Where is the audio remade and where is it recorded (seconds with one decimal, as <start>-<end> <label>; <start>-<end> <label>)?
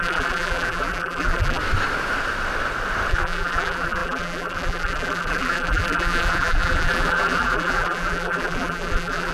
0.0-1.6 remade; 1.6-3.1 recorded; 3.1-9.3 remade